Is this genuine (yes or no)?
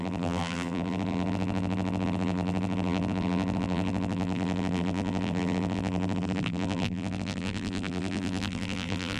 no